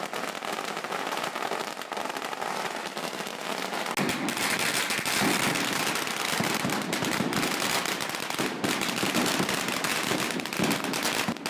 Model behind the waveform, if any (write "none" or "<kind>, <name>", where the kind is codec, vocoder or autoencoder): none